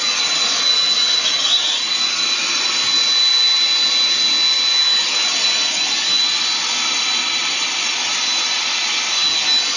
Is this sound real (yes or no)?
yes